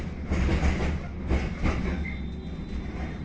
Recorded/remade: recorded